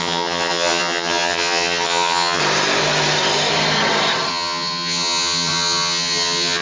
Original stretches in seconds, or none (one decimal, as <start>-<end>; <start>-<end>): 2.4-4.3